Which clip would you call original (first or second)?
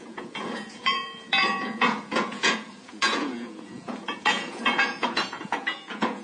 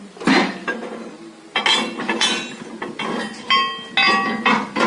second